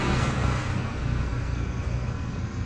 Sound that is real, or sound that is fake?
fake